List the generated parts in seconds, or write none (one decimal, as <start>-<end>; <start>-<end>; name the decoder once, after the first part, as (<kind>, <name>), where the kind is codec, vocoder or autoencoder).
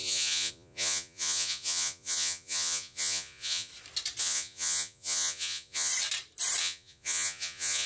0.0-3.7 (vocoder, Vocos); 4.2-5.9; 6.6-7.9